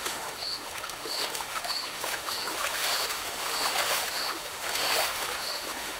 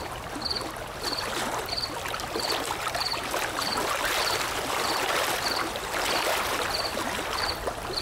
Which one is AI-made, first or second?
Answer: first